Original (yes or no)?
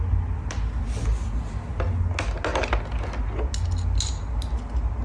yes